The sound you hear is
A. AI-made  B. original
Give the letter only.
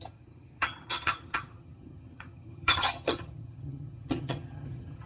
A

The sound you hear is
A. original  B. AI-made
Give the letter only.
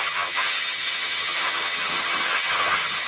B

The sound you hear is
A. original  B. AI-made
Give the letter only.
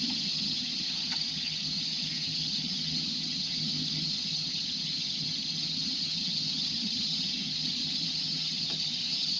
B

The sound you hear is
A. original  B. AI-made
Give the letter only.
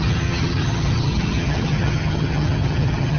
B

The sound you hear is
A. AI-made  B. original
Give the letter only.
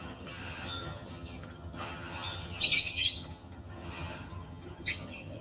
A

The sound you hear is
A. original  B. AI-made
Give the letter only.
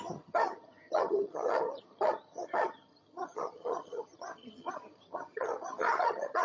B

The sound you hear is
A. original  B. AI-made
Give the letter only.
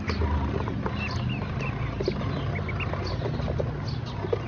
A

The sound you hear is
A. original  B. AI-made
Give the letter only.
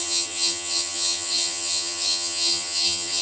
B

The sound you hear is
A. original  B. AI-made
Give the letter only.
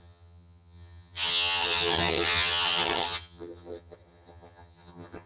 B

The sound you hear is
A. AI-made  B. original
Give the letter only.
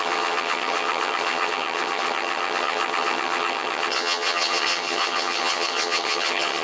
A